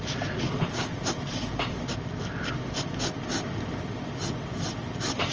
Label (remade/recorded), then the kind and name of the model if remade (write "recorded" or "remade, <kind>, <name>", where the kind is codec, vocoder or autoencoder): recorded